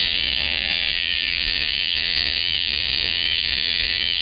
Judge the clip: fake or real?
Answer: fake